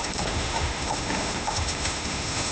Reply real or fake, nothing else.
fake